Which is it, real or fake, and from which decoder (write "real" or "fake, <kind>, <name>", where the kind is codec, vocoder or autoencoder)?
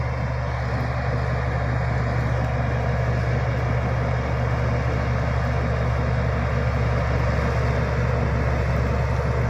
real